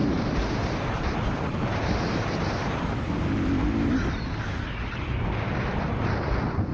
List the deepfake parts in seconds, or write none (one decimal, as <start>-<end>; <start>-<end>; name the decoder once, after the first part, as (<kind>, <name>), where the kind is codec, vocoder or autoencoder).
0.0-2.8 (vocoder, BigVGAN v2)